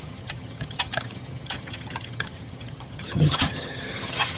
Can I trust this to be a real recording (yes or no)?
no